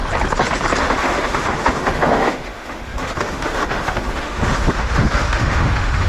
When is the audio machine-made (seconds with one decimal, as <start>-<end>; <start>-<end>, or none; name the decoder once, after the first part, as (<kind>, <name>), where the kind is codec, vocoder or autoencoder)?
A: 0.8-6.1 (autoencoder, DAC-VAE)